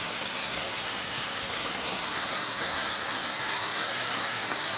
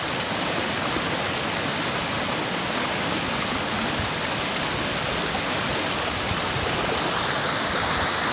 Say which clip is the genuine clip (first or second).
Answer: second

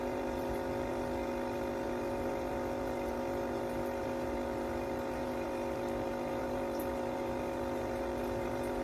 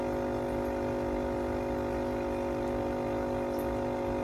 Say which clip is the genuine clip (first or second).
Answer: second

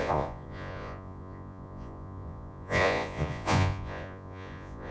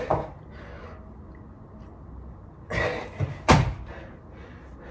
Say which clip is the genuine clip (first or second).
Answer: second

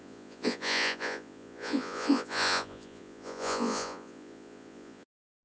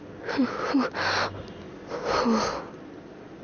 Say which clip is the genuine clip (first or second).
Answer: second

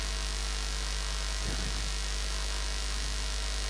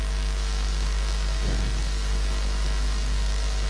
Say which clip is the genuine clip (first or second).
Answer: first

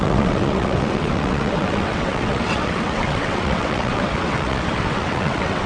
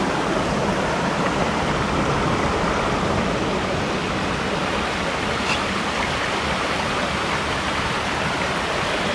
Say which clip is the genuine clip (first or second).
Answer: second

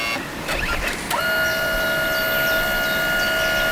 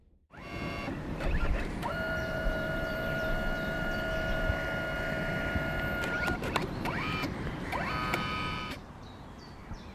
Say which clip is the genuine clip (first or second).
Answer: first